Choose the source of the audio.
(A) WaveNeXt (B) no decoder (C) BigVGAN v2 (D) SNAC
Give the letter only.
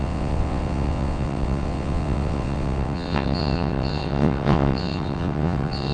A